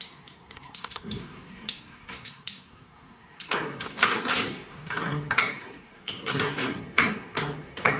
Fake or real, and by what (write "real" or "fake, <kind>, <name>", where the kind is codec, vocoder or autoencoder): fake, codec, SNAC